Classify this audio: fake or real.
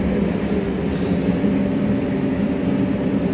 real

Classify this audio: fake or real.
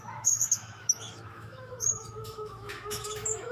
fake